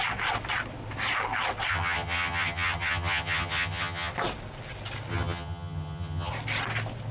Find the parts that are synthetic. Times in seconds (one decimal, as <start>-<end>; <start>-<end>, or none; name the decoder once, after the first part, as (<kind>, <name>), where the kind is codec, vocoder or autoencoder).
1.7-4.1 (vocoder, HiFi-GAN); 5.1-6.3